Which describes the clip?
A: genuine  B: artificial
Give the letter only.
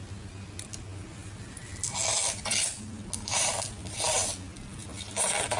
A